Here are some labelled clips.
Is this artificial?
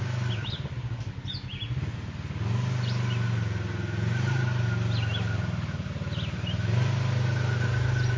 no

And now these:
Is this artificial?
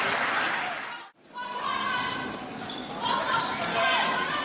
yes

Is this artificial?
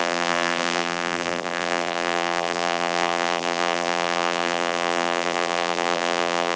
yes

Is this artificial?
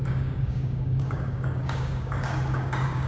yes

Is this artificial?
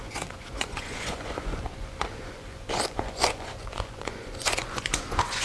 yes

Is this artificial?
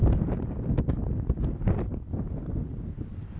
no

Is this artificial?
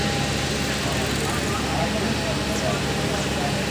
no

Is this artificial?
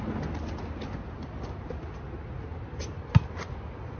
no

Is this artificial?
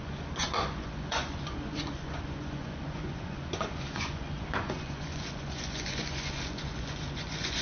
yes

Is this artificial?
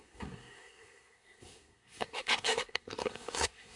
yes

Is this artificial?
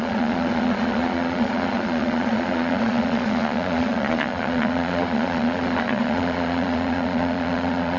yes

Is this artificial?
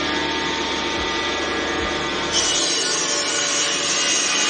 no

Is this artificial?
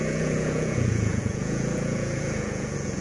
yes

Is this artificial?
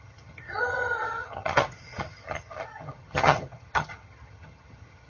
yes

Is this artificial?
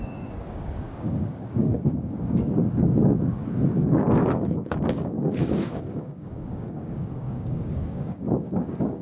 yes